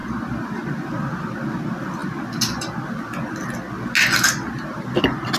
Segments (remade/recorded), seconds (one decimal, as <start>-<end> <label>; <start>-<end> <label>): 0.0-5.4 recorded